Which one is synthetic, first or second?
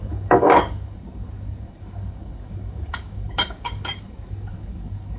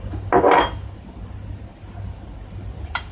first